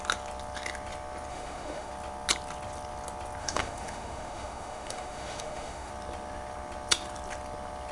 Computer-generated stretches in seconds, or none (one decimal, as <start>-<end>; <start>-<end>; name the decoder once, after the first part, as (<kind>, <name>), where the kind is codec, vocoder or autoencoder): 1.3-1.9 (autoencoder, DAC-VAE); 3.4-5.9